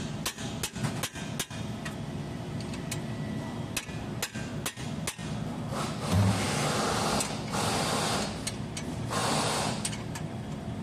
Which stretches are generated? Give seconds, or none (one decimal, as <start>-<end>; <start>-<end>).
9.2-10.8